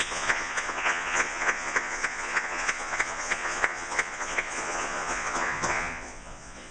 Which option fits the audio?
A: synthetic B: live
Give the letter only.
A